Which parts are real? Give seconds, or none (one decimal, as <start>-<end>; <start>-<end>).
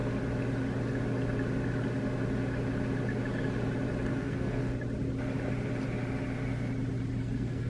0.0-4.1; 4.6-7.2